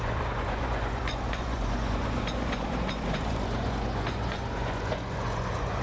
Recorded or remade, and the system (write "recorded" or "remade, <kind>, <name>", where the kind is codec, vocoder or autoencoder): remade, vocoder, Vocos